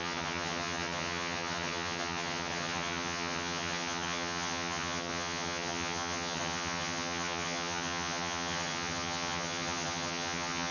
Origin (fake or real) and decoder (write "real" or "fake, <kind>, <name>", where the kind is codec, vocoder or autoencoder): fake, vocoder, HiFi-GAN